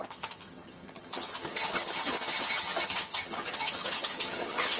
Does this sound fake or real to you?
fake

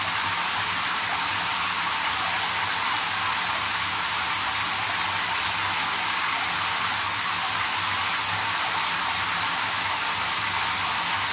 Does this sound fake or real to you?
real